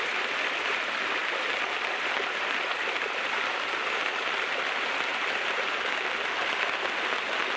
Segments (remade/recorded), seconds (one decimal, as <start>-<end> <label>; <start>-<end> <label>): 0.0-7.6 recorded